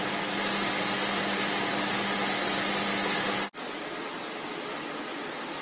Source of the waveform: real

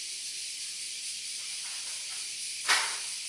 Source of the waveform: real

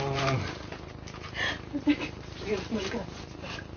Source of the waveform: fake